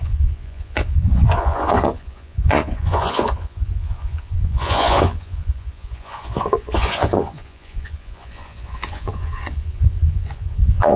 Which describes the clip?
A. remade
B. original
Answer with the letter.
A